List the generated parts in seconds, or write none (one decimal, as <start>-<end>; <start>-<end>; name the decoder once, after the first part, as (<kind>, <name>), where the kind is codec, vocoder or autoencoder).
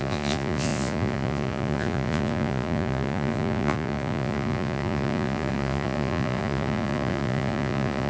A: 0.0-8.1 (vocoder, Vocos)